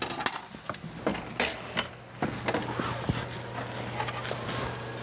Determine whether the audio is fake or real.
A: real